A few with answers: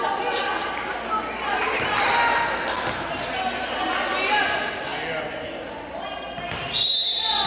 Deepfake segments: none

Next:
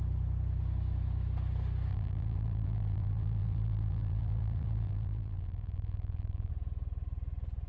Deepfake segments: 1.9-6.5 (vocoder, BigVGAN v2)

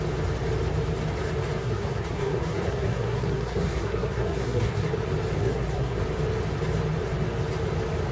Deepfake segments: 1.6-4.9 (codec, SNAC); 5.4-6.0

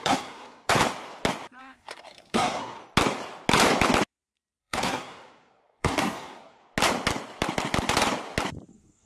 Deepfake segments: 0.0-0.8 (codec, SNAC); 1.6-2.8; 4.6-6.6; 8.7-9.1

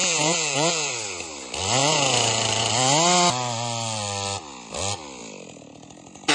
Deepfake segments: 0.0-0.9 (vocoder, Vocos); 1.8-2.7